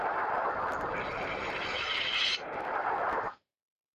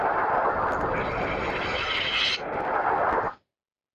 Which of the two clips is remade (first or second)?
first